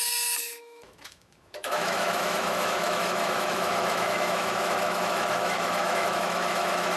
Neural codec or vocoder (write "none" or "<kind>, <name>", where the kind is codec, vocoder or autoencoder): autoencoder, DAC-VAE